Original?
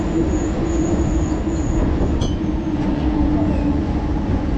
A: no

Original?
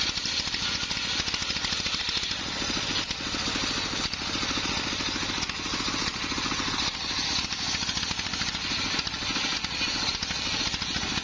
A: yes